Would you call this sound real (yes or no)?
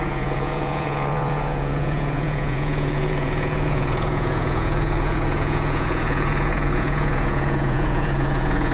no